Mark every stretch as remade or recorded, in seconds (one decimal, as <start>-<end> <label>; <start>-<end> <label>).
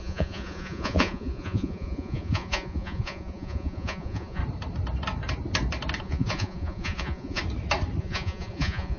0.0-4.4 remade; 4.4-6.0 recorded; 6.0-7.4 remade; 7.4-8.0 recorded; 8.0-9.0 remade